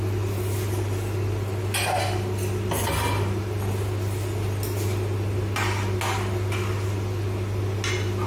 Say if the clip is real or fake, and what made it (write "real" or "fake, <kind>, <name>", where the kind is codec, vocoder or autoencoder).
real